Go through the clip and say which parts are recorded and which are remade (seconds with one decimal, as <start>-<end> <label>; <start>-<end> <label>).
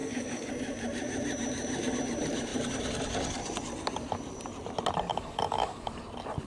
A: 0.0-0.5 remade; 0.5-5.1 recorded; 5.1-5.9 remade; 5.9-6.5 recorded